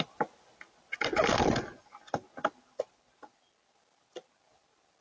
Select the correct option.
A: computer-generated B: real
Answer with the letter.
B